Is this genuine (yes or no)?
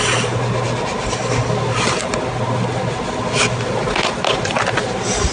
yes